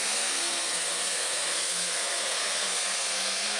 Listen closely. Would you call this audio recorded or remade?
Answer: remade